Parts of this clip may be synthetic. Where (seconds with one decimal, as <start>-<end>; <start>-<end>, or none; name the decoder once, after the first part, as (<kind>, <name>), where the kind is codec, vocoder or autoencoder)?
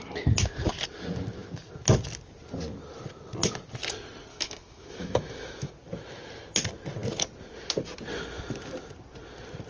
4.3-5.7 (autoencoder, DAC-VAE)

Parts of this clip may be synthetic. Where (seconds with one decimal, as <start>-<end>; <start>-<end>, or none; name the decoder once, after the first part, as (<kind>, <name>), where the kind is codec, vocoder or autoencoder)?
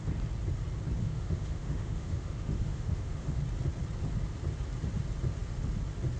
1.0-3.4 (autoencoder, DAC-VAE)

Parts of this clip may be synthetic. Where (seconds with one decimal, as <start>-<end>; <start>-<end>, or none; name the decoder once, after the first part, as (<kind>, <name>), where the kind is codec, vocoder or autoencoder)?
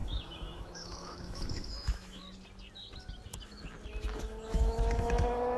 0.0-2.2 (autoencoder, DAC-VAE); 3.9-5.6